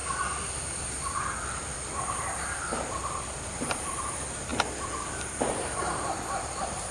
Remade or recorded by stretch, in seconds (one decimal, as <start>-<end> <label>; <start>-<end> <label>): 0.0-6.9 remade